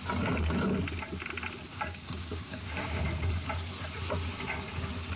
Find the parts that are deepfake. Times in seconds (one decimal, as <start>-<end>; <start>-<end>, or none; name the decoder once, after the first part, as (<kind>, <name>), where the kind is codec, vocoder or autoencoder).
1.7-3.0 (codec, DAC)